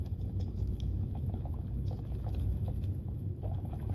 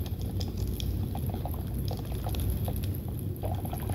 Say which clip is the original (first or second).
second